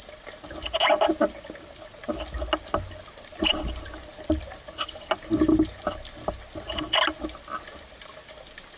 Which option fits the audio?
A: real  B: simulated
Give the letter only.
A